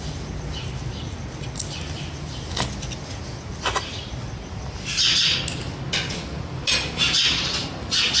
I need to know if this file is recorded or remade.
recorded